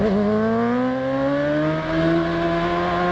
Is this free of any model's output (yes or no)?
yes